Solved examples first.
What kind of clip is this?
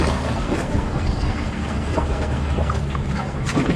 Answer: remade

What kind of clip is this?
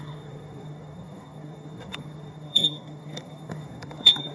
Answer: remade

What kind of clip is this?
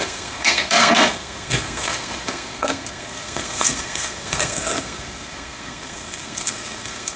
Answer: remade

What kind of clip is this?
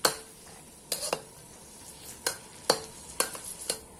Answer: recorded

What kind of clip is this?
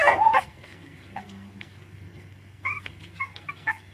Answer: remade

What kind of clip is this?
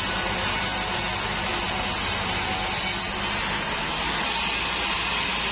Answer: recorded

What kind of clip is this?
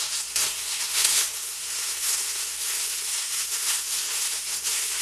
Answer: remade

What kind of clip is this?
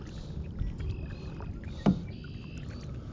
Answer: recorded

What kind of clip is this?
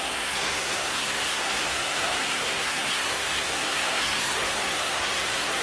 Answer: remade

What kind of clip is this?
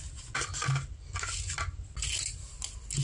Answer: recorded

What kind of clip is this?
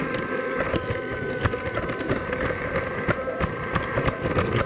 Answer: recorded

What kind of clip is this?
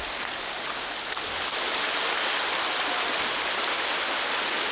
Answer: recorded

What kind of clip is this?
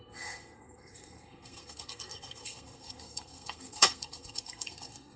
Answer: remade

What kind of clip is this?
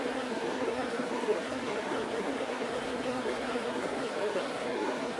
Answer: remade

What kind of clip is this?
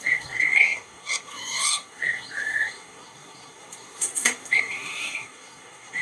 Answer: remade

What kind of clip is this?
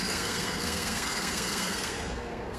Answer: remade